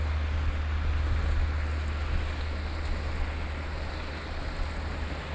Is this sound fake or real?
real